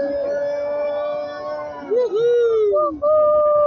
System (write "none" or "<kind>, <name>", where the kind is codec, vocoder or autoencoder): none